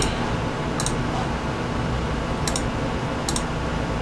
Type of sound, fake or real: real